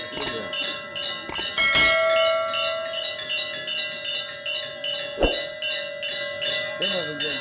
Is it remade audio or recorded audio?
recorded